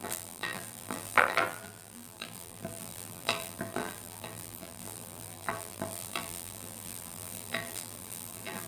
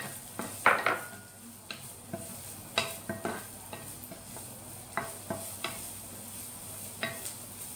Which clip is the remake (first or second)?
first